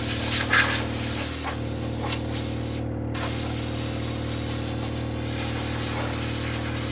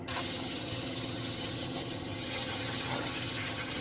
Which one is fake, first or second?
second